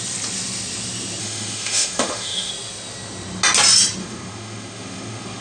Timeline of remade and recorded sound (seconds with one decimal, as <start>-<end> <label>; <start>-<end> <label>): 0.0-1.2 recorded; 1.2-2.5 remade; 2.5-4.0 recorded; 4.0-5.4 remade